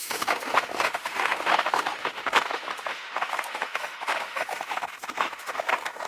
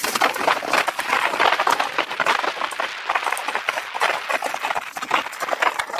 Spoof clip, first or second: first